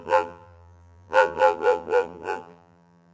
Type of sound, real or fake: fake